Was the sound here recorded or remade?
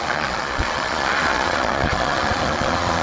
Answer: remade